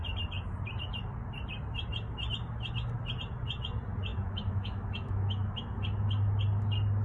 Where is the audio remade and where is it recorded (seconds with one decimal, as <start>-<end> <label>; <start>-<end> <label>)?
0.0-4.1 recorded; 4.1-5.8 remade; 5.8-7.0 recorded